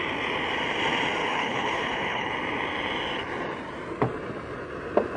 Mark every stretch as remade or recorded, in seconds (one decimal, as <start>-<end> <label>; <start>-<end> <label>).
0.0-1.2 recorded; 1.2-2.3 remade; 2.3-5.2 recorded